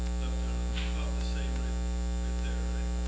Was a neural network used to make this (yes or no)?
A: no